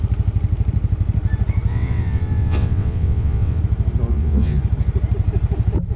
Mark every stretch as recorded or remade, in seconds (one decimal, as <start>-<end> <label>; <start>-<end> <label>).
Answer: 0.0-1.7 recorded; 1.7-3.6 remade; 3.6-4.1 recorded; 4.1-4.6 remade; 4.6-6.0 recorded